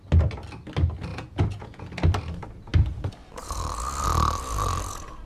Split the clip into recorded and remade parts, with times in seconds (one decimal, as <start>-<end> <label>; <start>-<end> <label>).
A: 0.0-1.1 recorded; 1.1-1.8 remade; 1.8-5.3 recorded